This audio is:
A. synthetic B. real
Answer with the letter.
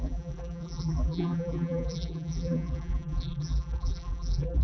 A